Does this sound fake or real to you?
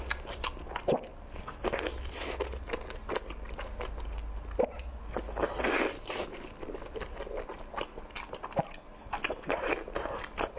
real